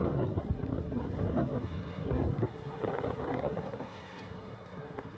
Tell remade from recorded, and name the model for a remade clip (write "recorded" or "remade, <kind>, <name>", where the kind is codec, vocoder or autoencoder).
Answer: remade, codec, SNAC